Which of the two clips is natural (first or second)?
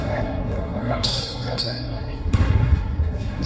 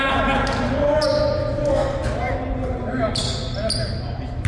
second